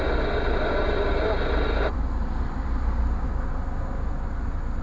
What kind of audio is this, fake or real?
real